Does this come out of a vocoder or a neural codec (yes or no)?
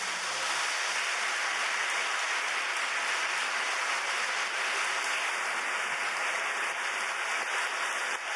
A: no